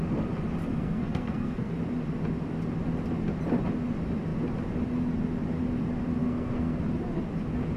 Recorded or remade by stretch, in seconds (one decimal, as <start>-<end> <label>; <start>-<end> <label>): 0.0-0.7 recorded; 0.7-1.7 remade; 1.7-6.2 recorded; 6.2-6.8 remade; 6.8-7.8 recorded